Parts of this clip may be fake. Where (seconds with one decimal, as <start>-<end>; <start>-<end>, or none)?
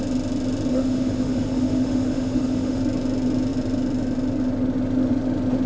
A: 0.7-2.8